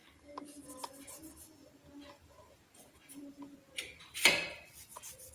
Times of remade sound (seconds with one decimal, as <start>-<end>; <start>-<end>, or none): none